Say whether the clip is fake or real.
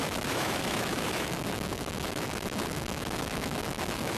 fake